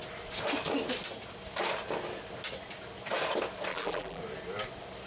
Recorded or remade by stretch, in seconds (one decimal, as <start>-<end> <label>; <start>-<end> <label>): 0.0-3.7 recorded; 3.7-4.2 remade; 4.2-5.1 recorded